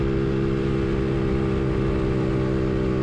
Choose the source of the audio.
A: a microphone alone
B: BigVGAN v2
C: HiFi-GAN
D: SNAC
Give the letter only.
A